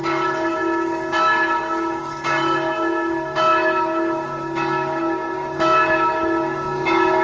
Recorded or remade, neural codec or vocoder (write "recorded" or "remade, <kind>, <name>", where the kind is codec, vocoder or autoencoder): remade, autoencoder, DAC-VAE